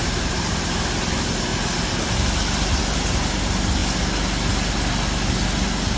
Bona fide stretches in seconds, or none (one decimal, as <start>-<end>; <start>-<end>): 0.5-6.0